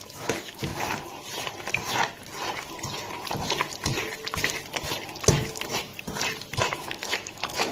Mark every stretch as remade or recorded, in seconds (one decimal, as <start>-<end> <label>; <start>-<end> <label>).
0.0-0.7 remade; 0.7-5.3 recorded; 5.3-5.9 remade; 5.9-6.6 recorded; 6.6-7.7 remade